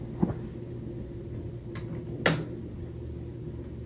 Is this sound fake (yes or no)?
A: no